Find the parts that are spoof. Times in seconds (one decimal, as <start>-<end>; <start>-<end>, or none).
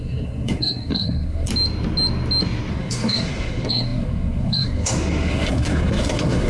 0.0-1.5; 2.7-6.5